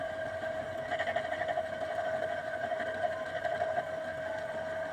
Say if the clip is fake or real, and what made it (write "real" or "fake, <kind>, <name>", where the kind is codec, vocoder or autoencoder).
real